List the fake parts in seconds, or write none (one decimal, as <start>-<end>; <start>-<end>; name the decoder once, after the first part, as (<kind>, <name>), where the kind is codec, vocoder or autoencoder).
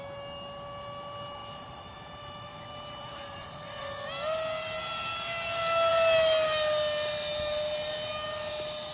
1.4-2.5 (vocoder, BigVGAN v2)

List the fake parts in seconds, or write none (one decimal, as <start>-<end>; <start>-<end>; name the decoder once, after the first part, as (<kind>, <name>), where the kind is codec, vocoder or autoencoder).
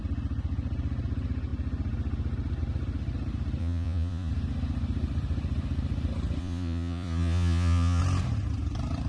3.6-4.3 (vocoder, Vocos); 6.4-8.0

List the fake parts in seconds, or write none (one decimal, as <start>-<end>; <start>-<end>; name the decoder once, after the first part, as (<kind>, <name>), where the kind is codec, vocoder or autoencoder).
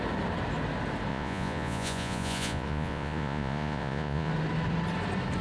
1.1-4.3 (vocoder, Vocos)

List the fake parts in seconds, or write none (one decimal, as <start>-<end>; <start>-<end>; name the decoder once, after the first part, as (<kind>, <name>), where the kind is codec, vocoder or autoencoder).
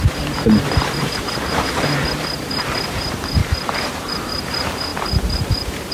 0.0-4.9 (vocoder, BigVGAN v2); 5.4-5.9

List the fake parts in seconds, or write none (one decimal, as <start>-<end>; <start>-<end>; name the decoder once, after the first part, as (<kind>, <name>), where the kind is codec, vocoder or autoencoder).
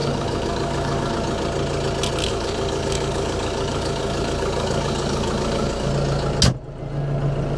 0.0-1.1 (codec, DAC); 2.2-5.9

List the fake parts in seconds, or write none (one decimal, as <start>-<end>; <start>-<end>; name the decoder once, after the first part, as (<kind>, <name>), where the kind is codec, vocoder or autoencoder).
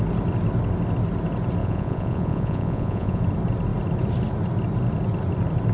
1.6-3.2 (vocoder, Vocos)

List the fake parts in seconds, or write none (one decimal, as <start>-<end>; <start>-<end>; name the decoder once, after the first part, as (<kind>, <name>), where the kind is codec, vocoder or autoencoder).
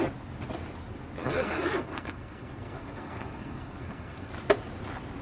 1.2-4.3 (codec, SNAC)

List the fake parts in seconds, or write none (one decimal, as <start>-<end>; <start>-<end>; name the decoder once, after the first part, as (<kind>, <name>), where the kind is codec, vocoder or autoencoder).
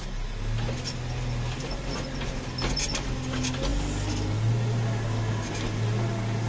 none